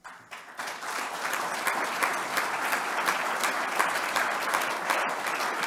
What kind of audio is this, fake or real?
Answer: real